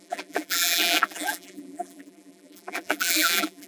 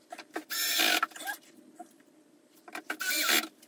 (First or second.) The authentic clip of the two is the second